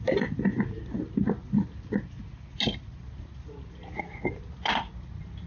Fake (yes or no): no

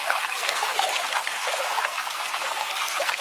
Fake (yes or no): yes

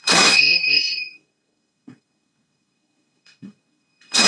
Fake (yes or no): yes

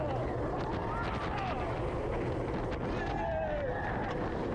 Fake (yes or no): no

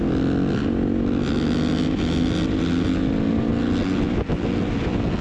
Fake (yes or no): no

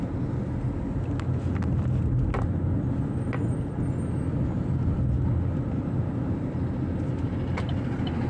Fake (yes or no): no